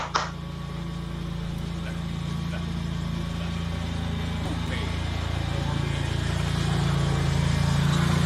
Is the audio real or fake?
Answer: real